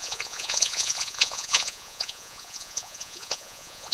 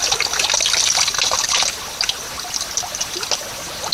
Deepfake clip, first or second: first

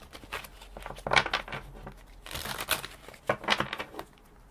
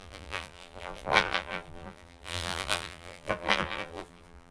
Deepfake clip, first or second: second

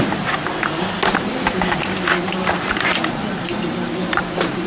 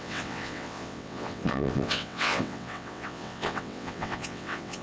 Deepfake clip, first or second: second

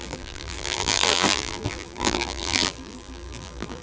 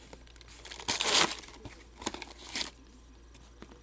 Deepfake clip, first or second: first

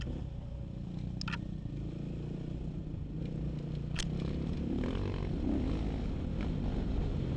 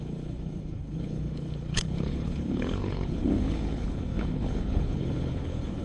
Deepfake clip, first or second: second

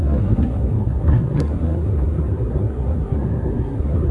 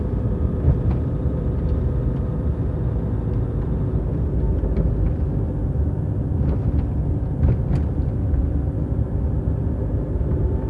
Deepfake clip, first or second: first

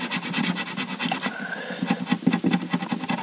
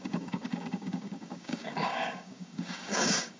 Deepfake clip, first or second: second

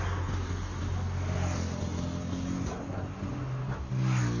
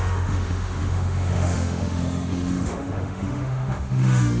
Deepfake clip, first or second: second